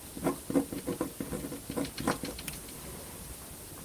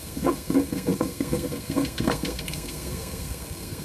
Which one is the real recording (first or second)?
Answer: first